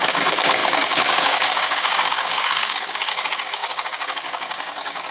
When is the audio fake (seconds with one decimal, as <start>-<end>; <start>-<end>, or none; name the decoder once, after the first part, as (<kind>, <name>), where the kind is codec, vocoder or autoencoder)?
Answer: 0.0-5.1 (codec, DAC)